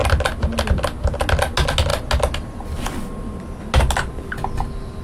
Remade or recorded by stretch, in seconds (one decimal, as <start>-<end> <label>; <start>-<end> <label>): 0.0-5.0 recorded